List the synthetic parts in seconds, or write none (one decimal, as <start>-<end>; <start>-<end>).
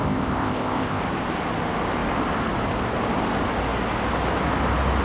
0.0-1.0